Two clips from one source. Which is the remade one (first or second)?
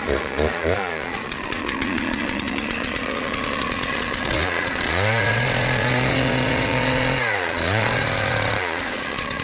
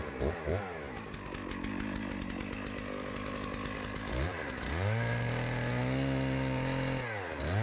first